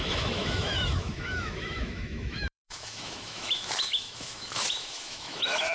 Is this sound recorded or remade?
remade